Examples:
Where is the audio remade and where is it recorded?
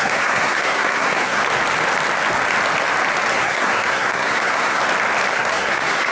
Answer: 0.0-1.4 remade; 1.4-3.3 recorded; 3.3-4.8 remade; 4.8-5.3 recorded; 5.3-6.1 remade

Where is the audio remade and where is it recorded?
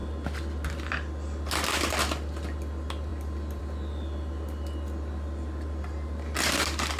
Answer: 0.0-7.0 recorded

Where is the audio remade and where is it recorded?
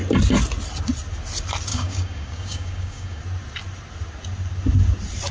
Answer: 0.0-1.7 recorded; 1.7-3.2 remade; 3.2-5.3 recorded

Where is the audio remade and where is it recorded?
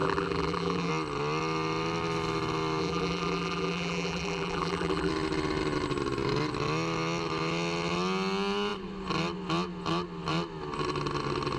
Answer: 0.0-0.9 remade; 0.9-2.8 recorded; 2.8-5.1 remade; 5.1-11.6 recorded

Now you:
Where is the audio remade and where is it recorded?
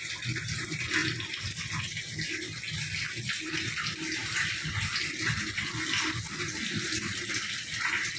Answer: 0.0-8.2 recorded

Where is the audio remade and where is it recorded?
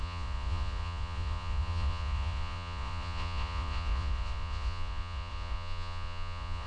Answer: 0.0-6.7 remade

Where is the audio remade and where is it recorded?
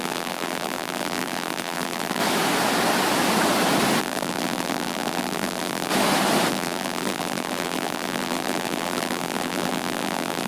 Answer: 0.0-2.2 remade; 2.2-4.0 recorded; 4.0-5.9 remade; 5.9-6.5 recorded; 6.5-10.5 remade